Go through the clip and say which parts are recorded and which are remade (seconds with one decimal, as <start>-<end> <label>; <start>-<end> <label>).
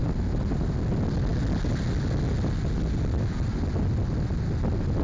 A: 0.0-0.8 remade; 0.8-5.0 recorded